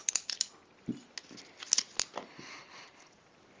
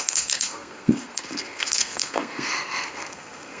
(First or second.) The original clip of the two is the first